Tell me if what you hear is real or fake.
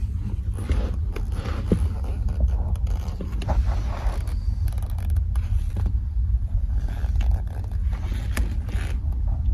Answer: real